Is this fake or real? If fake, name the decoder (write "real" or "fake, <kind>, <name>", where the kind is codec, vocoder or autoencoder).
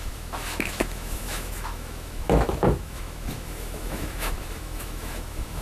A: fake, autoencoder, DAC-VAE